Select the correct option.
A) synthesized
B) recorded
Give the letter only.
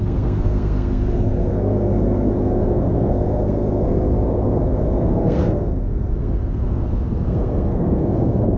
A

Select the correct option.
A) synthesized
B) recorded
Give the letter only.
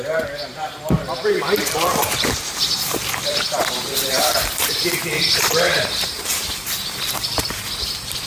A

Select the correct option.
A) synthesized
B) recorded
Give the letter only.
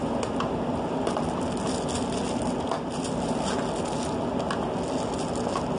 B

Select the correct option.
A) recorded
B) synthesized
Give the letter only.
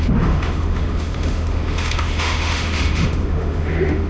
B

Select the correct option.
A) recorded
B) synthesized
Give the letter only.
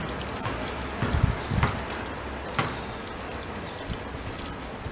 A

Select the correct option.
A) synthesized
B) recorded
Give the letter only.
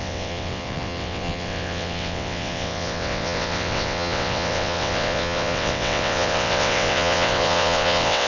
A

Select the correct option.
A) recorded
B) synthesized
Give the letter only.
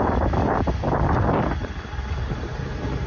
A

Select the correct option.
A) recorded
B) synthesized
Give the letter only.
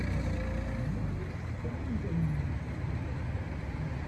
A